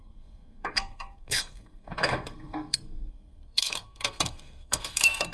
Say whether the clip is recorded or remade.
remade